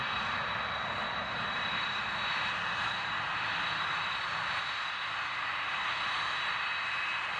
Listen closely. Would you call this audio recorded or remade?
recorded